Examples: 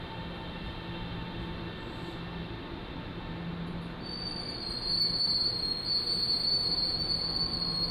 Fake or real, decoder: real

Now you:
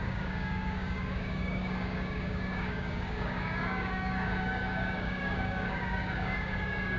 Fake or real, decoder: fake, codec, DAC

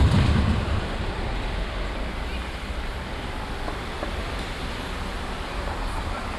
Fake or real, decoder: fake, vocoder, BigVGAN v2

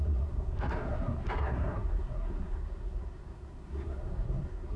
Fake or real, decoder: fake, codec, SNAC